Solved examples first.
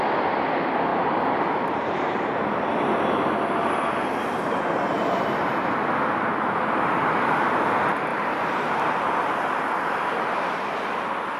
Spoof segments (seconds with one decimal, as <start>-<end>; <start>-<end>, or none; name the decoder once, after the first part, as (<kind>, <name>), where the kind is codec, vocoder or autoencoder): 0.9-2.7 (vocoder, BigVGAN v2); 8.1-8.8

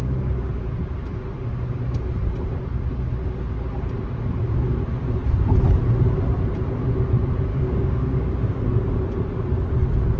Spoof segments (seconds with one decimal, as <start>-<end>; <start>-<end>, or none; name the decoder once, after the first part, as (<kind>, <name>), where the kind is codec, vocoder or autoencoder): 0.0-0.5 (codec, DAC); 7.5-8.6

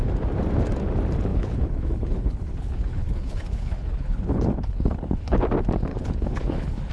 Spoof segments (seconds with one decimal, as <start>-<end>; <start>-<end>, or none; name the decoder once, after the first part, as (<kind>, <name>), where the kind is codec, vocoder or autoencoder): 1.3-5.4 (codec, HILCodec); 5.9-6.9

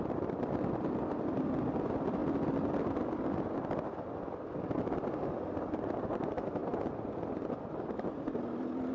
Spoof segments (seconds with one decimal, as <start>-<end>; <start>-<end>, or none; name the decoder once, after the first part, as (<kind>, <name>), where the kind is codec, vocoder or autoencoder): none

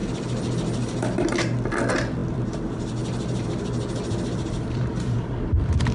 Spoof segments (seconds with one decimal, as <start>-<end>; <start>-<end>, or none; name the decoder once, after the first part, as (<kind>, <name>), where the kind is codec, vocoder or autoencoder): 1.9-3.0 (vocoder, BigVGAN v2); 4.3-5.9

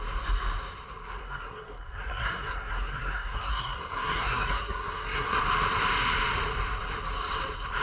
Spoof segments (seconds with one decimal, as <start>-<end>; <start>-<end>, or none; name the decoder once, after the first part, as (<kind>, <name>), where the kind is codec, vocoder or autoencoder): 1.2-5.4 (codec, SNAC)